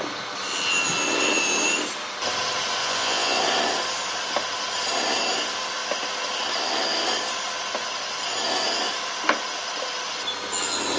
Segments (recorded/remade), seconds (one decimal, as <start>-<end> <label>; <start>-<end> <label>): 0.0-2.8 recorded; 2.8-3.4 remade; 3.4-11.0 recorded